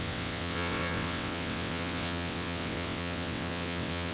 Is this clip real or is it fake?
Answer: fake